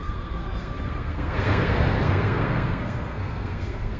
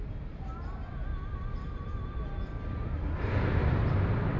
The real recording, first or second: second